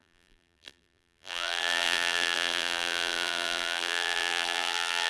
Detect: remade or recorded remade